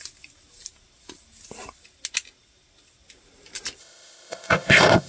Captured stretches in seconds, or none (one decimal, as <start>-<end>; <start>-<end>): 0.0-3.8